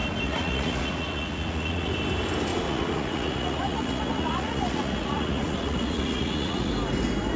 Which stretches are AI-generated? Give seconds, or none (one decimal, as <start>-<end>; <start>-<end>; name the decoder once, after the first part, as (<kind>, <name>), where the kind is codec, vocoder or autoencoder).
0.0-1.9 (vocoder, Vocos); 2.5-6.7